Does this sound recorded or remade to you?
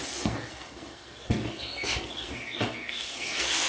remade